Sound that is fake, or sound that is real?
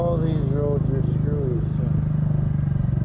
real